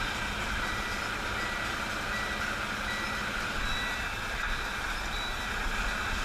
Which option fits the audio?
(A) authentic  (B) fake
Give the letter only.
A